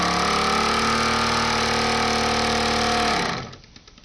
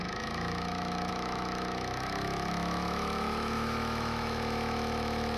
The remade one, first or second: second